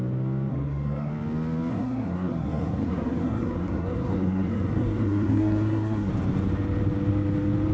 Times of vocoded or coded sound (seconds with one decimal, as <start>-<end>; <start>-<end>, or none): 0.5-1.1; 1.7-6.1